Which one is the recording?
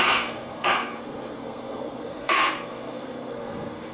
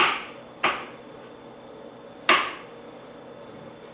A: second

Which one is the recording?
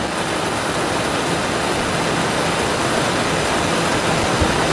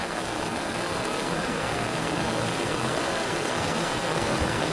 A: first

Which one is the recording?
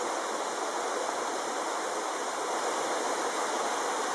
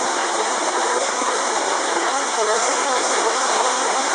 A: first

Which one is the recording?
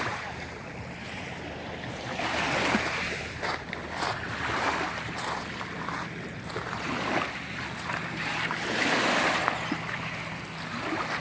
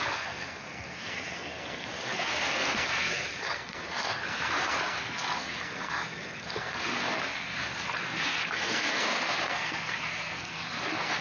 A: first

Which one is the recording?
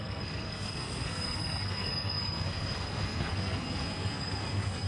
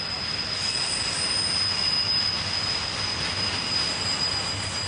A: second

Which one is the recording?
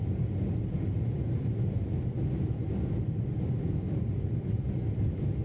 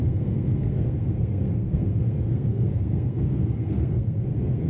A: first